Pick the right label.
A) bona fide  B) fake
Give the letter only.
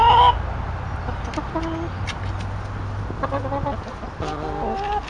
A